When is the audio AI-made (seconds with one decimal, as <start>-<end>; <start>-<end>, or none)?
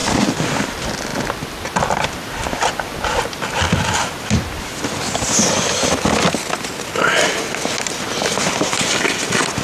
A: none